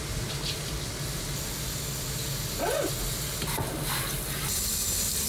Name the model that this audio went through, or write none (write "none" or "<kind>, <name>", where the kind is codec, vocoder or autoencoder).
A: none